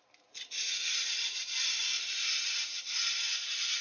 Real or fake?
real